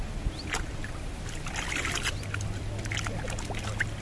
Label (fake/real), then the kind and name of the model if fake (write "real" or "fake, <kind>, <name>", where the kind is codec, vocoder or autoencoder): real